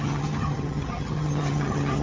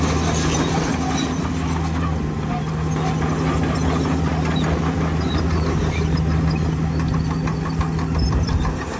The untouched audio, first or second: second